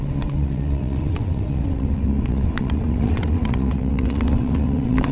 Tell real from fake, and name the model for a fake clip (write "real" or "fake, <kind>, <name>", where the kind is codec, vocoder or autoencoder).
fake, vocoder, WaveNeXt